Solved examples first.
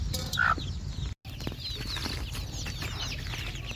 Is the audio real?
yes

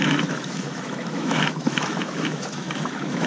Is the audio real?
no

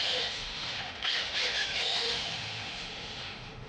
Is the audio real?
no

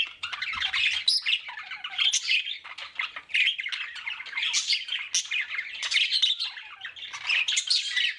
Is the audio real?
yes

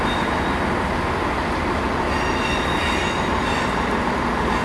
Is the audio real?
yes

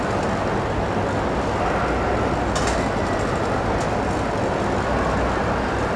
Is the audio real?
yes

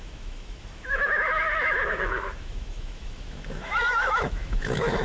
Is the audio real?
no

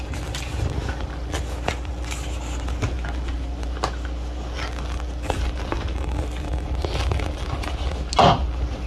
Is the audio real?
yes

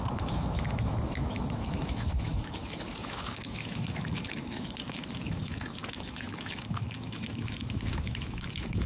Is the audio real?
no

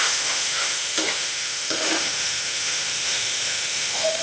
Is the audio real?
no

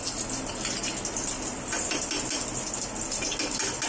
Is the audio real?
yes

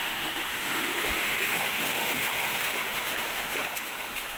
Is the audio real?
no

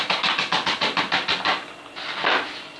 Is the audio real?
yes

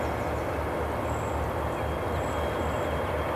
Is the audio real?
yes